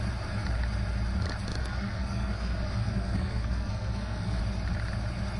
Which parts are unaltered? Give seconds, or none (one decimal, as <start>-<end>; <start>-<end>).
0.0-1.6; 4.4-5.4